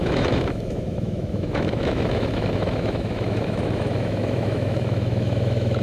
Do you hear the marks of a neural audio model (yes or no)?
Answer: yes